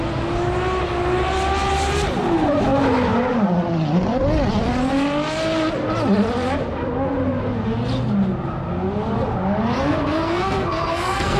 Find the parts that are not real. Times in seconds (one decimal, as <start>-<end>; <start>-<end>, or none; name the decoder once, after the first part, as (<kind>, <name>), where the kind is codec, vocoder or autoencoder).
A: 9.8-11.4 (codec, SNAC)